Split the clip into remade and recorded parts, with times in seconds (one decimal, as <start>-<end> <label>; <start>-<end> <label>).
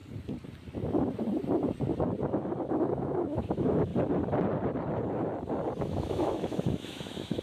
0.0-2.7 recorded; 2.7-3.9 remade; 3.9-5.8 recorded; 5.8-7.4 remade